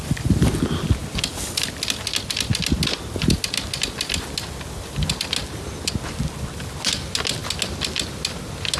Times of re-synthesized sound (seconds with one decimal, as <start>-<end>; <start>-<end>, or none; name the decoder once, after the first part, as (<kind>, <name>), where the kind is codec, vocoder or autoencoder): none